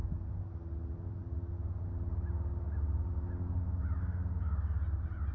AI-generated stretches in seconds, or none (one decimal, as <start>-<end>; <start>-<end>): none